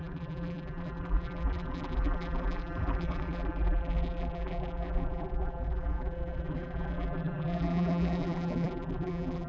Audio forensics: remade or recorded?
remade